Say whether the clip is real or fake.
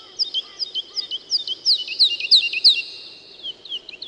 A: real